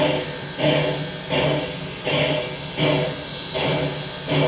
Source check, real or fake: real